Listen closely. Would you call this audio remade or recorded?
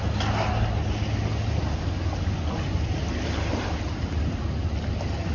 recorded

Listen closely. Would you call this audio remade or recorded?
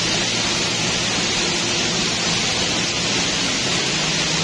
recorded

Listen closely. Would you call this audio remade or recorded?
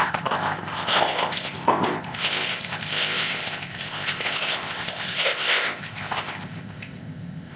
remade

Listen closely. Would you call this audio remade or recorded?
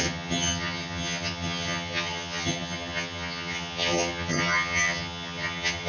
remade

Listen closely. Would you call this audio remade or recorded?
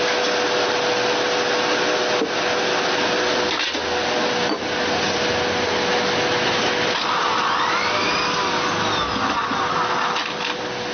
recorded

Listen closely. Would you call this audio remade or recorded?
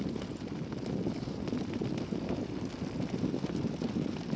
recorded